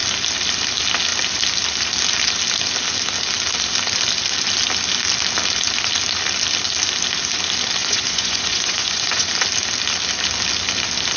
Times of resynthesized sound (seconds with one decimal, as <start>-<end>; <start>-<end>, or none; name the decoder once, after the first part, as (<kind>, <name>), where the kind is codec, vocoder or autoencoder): 7.8-9.3 (vocoder, Vocos)